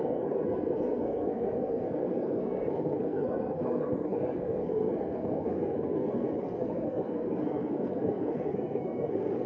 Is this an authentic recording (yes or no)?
no